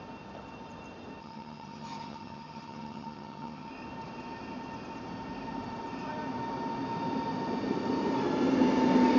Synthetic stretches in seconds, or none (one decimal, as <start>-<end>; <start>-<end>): 1.2-3.7